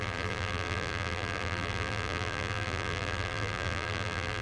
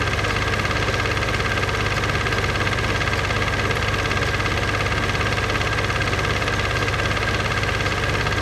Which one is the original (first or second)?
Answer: second